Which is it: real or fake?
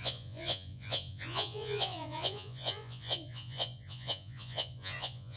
fake